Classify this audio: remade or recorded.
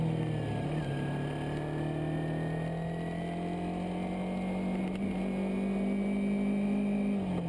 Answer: recorded